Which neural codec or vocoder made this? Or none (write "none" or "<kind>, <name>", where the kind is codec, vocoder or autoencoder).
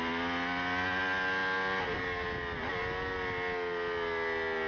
none